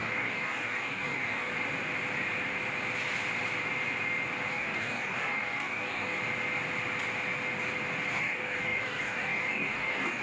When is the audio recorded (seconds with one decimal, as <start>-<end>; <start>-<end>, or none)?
1.5-4.5; 6.2-8.2